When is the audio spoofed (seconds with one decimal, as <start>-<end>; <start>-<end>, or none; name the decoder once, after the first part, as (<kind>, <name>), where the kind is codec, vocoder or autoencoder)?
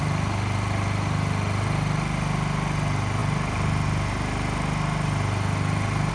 none